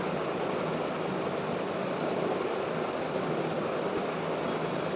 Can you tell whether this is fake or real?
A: real